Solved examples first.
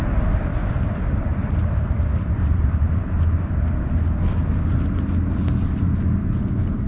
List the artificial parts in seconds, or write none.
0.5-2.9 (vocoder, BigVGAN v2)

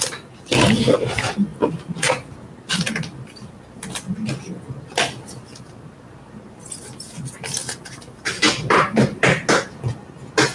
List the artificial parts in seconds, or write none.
7.6-9.4 (vocoder, BigVGAN v2)

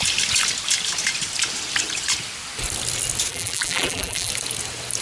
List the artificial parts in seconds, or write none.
3.3-4.3 (vocoder, BigVGAN v2)

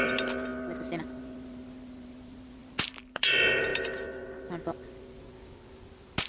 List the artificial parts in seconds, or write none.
none

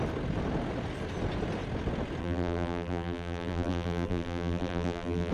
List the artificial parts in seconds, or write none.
2.2-5.3 (vocoder, BigVGAN v2)

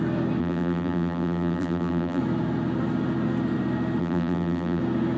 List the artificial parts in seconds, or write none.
0.4-2.2 (vocoder, BigVGAN v2); 4.0-4.8

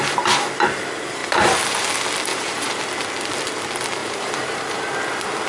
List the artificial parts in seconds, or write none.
2.3-2.8 (vocoder, BigVGAN v2); 4.0-4.9